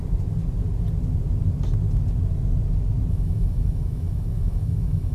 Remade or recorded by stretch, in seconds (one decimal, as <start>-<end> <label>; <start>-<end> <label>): 0.0-3.1 recorded; 3.1-5.1 remade